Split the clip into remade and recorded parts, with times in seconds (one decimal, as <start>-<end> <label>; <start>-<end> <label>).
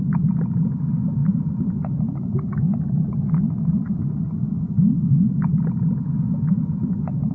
0.0-7.3 recorded